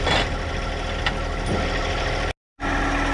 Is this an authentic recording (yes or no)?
yes